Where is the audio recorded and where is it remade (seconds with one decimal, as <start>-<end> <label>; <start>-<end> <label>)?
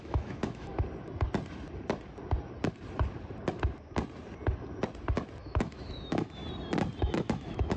0.0-0.7 remade; 0.7-5.4 recorded; 5.4-6.4 remade; 6.4-7.0 recorded; 7.0-7.8 remade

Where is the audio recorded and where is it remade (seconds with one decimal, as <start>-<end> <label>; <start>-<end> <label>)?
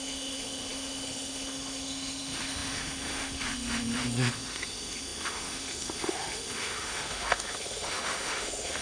0.0-8.8 remade